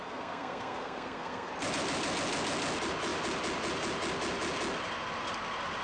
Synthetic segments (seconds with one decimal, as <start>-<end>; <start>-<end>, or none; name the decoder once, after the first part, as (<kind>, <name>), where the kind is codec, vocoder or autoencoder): 0.0-1.5 (codec, SNAC)